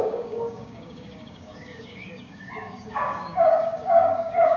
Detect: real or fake fake